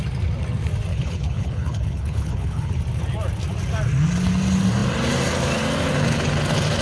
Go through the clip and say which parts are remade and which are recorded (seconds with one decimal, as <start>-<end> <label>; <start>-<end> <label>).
0.0-0.9 recorded; 0.9-2.8 remade; 2.8-6.8 recorded